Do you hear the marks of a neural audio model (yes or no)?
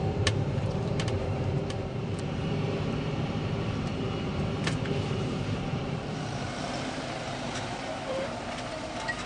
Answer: yes